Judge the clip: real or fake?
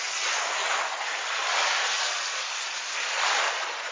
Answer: real